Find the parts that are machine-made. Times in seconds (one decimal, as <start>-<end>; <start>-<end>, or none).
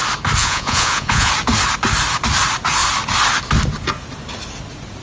0.4-1.3